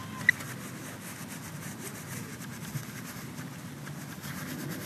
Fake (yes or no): no